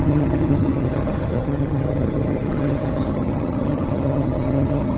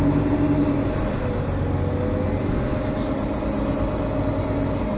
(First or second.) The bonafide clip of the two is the second